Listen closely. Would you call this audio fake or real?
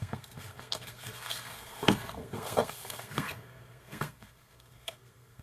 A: fake